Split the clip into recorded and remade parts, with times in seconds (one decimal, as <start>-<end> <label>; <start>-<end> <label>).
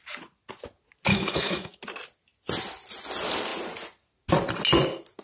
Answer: 0.0-1.1 recorded; 1.1-1.7 remade; 1.7-5.2 recorded